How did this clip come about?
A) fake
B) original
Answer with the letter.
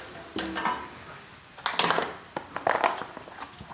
B